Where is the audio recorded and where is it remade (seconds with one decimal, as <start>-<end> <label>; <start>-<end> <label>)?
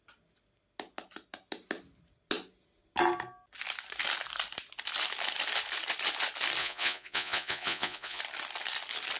0.0-6.6 recorded; 6.6-8.2 remade; 8.2-9.2 recorded